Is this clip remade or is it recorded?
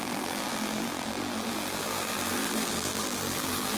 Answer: remade